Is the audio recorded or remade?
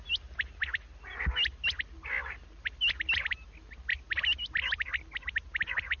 recorded